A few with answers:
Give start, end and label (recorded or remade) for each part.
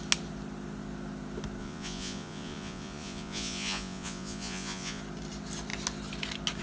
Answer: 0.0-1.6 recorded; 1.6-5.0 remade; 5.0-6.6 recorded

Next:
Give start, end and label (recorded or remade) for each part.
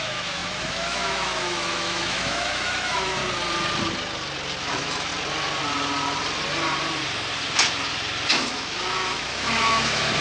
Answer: 0.0-3.2 remade; 3.2-4.6 recorded; 4.6-5.1 remade; 5.1-8.3 recorded; 8.3-10.2 remade